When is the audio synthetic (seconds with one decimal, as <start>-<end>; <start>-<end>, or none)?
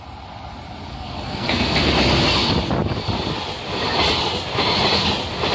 0.9-1.9